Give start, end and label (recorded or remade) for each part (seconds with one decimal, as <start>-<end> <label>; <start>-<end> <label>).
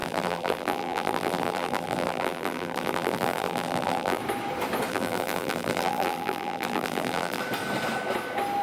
0.0-4.2 remade; 4.2-4.9 recorded; 4.9-7.4 remade; 7.4-8.6 recorded